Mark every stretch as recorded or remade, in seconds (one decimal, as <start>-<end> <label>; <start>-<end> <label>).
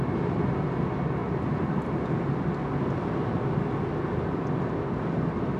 0.0-5.6 recorded